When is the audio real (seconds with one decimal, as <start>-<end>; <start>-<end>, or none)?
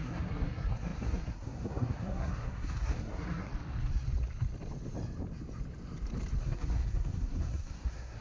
3.5-6.4